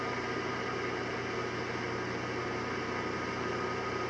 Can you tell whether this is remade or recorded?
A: recorded